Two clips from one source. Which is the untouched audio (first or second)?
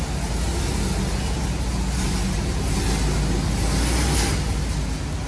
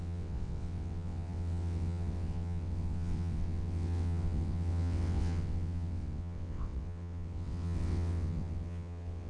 first